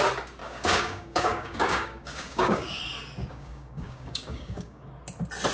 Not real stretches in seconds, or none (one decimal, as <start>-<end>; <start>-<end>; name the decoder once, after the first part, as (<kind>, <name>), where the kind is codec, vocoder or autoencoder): 0.4-2.8 (codec, DAC); 3.2-4.9